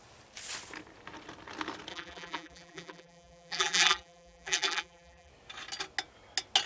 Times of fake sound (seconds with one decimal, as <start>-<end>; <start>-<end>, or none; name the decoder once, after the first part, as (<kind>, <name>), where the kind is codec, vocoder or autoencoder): 1.9-5.3 (vocoder, BigVGAN v2)